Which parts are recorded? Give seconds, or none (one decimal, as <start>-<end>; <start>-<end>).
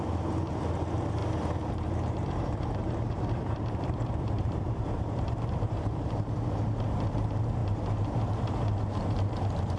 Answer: none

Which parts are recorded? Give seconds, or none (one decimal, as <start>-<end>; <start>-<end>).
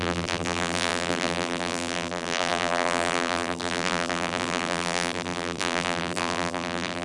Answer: none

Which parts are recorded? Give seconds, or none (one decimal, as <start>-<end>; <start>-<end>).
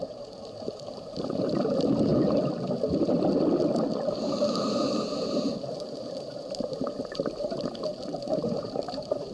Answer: 2.1-4.3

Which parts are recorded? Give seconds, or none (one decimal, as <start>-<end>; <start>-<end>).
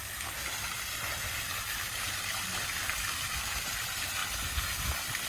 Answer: 0.7-1.3; 4.2-5.3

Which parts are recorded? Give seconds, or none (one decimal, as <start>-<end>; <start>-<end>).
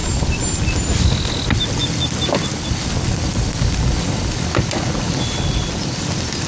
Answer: 0.0-6.5